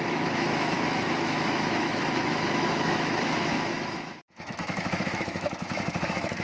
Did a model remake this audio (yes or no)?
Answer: yes